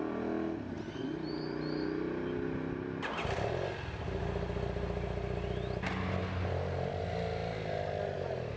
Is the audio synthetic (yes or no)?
no